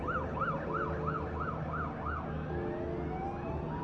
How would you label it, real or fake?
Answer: real